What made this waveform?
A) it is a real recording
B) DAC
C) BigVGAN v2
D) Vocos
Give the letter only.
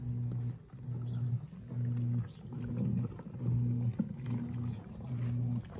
A